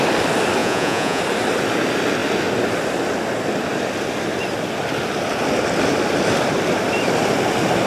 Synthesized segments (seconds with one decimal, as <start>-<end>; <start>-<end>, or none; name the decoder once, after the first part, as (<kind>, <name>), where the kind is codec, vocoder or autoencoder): 0.6-1.2 (vocoder, Vocos)